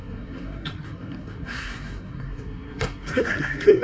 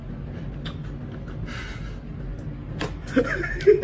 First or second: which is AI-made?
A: first